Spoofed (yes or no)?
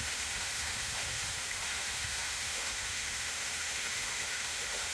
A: yes